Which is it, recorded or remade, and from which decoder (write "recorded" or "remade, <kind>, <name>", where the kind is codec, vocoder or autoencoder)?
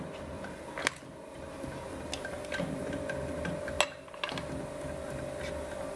recorded